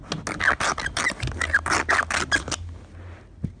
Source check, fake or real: real